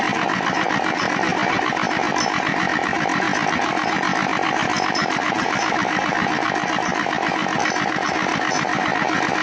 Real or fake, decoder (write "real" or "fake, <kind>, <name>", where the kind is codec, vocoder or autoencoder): real